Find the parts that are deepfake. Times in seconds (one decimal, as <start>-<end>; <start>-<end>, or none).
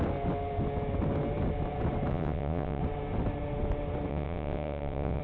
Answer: 2.1-2.8; 4.1-5.2